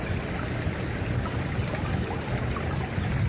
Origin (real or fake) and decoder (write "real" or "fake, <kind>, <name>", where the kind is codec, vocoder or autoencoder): real